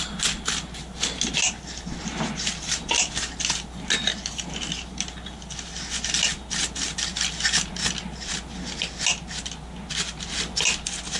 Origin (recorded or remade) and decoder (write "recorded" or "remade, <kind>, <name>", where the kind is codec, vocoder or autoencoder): recorded